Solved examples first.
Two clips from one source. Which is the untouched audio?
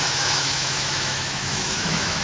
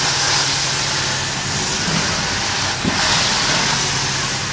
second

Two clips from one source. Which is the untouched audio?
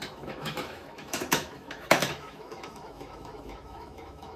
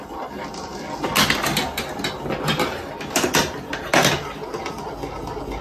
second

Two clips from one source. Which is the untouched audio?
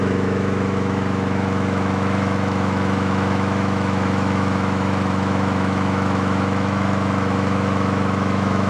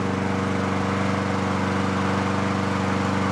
second